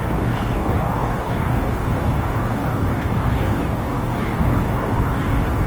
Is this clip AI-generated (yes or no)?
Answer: yes